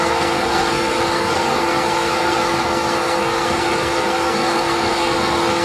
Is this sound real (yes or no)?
no